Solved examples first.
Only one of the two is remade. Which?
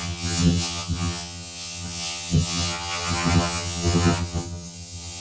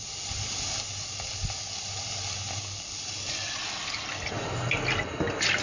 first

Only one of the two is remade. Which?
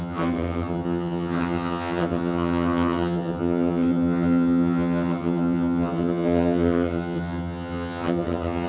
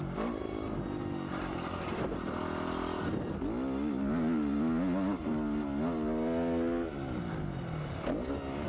first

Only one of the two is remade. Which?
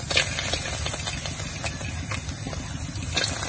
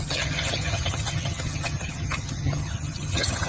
second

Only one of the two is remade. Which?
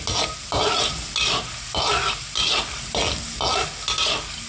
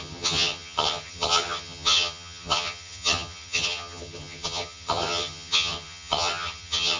second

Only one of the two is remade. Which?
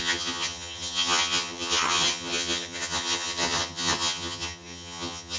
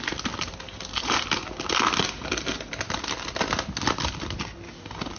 first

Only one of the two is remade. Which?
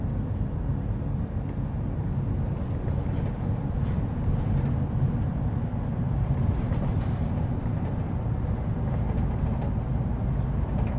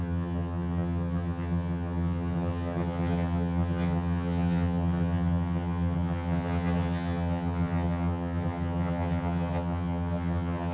second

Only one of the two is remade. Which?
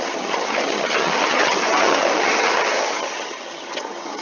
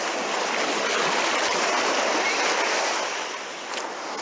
first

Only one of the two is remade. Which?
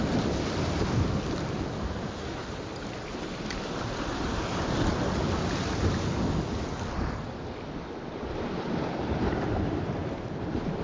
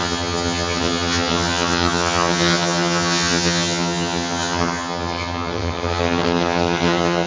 second